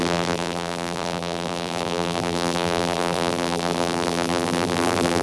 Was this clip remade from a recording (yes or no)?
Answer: yes